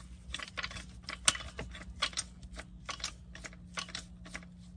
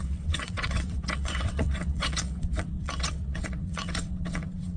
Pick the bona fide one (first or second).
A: first